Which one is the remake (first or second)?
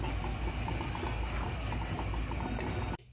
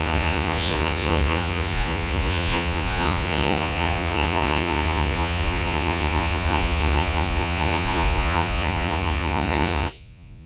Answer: second